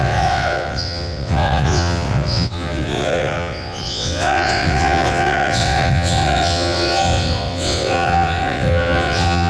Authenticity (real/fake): fake